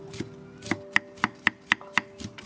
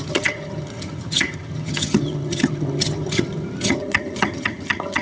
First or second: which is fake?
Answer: second